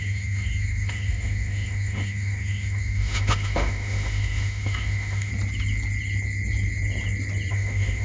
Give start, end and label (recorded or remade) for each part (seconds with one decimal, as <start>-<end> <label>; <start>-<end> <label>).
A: 0.0-5.3 remade; 5.3-7.5 recorded; 7.5-8.0 remade